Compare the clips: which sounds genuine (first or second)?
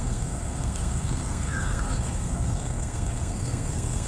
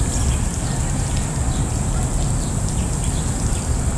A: second